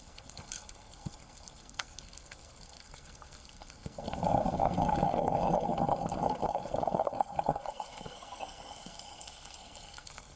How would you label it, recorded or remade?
remade